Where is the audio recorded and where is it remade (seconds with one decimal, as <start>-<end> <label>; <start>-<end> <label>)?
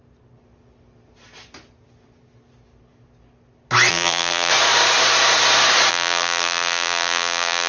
0.0-3.9 recorded; 3.9-4.5 remade; 4.5-5.9 recorded; 5.9-7.7 remade